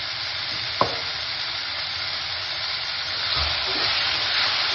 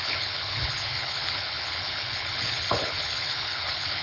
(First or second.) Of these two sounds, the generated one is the second